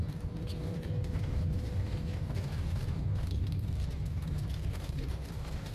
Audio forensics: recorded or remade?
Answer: remade